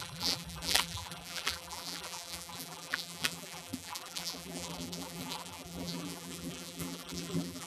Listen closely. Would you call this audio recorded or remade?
remade